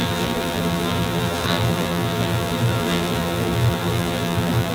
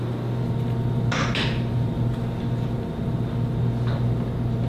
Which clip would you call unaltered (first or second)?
second